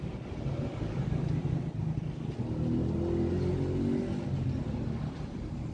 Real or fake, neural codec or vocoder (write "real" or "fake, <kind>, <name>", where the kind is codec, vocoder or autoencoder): real